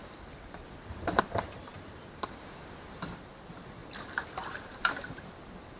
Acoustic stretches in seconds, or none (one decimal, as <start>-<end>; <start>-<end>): 3.3-3.8; 5.1-5.8